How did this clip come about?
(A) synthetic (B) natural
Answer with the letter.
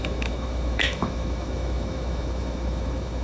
A